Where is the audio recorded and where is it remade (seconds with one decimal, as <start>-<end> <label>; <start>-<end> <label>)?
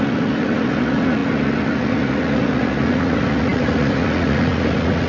0.0-5.1 remade